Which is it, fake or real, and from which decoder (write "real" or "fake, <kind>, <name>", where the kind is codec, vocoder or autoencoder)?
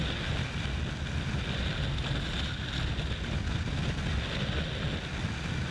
real